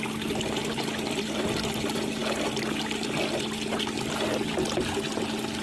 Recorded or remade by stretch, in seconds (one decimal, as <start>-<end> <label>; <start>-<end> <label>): 0.0-0.6 recorded; 0.6-1.4 remade; 1.4-5.6 recorded